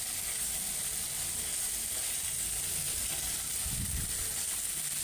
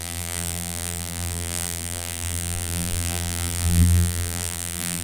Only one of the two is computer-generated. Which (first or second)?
second